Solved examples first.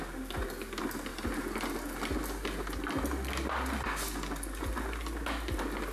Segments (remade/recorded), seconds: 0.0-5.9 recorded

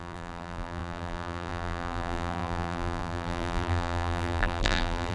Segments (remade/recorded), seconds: 0.0-5.1 remade

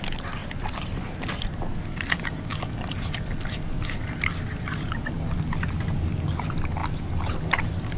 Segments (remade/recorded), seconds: 0.0-0.4 recorded; 0.4-1.6 remade; 1.6-2.5 recorded; 2.5-3.2 remade; 3.2-8.0 recorded

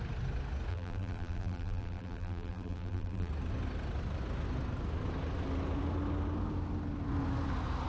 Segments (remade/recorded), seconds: 0.0-0.7 recorded; 0.7-3.3 remade; 3.3-7.9 recorded